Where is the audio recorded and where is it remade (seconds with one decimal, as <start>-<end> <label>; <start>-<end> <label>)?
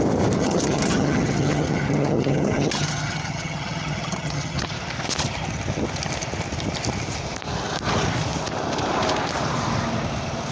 0.0-0.4 recorded; 0.4-4.7 remade; 4.7-10.5 recorded